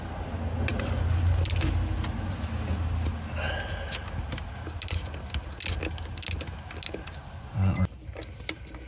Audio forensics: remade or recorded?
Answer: recorded